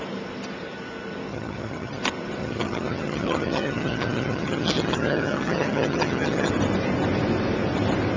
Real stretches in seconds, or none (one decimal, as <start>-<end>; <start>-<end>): 0.0-1.3; 2.0-2.4; 6.5-8.2